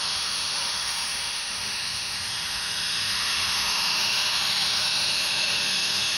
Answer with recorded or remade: remade